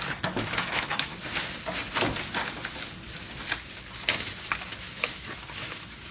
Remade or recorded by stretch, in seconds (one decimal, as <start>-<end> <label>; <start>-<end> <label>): 0.0-1.1 remade; 1.1-4.8 recorded; 4.8-6.1 remade